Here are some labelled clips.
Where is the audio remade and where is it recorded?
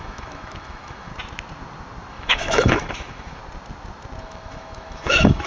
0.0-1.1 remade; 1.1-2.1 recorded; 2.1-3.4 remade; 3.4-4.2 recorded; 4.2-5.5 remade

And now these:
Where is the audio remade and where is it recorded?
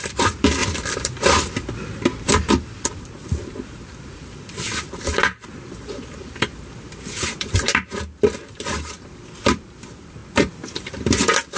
0.0-10.2 remade; 10.2-10.8 recorded; 10.8-11.6 remade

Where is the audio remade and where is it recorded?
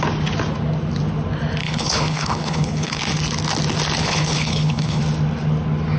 0.0-1.6 recorded; 1.6-3.0 remade; 3.0-4.0 recorded; 4.0-5.0 remade; 5.0-6.0 recorded